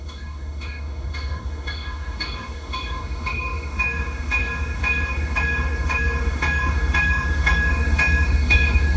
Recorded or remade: remade